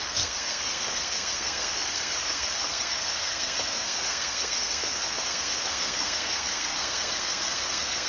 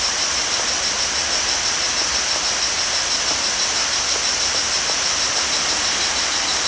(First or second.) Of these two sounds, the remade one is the first